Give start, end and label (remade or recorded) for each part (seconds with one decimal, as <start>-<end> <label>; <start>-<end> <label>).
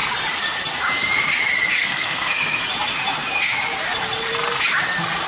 0.0-1.8 recorded; 1.8-2.6 remade; 2.6-5.3 recorded